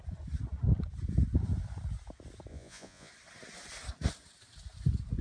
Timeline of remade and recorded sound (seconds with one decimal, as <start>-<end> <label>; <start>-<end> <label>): 0.0-2.5 recorded; 2.5-3.1 remade; 3.1-5.2 recorded